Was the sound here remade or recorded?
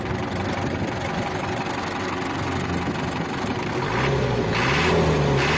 recorded